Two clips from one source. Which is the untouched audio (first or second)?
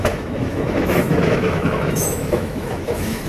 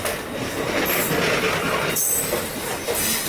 second